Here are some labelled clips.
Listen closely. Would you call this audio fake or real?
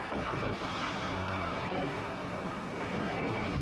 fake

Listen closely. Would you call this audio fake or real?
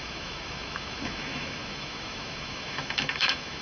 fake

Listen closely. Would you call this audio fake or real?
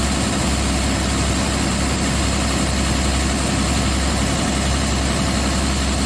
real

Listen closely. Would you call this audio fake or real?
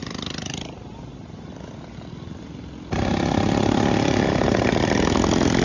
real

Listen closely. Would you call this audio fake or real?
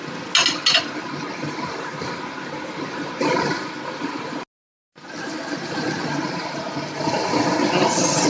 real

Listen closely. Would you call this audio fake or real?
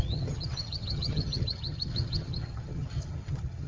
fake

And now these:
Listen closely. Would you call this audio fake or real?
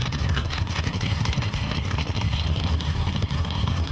fake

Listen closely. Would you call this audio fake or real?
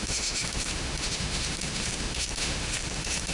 fake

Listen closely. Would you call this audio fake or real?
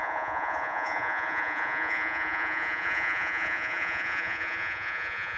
fake